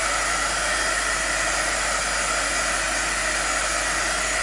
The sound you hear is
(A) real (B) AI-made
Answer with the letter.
A